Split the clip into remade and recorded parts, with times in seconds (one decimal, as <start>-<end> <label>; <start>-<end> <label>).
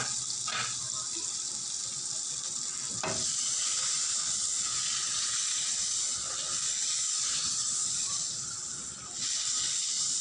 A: 0.0-10.2 recorded